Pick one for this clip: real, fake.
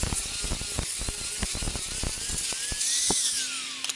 real